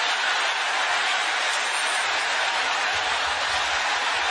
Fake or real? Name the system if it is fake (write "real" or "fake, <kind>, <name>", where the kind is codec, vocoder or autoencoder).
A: real